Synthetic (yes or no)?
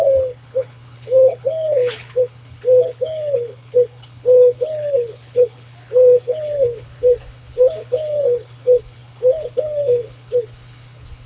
yes